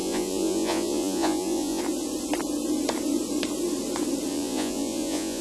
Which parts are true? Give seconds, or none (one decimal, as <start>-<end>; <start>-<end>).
1.8-4.3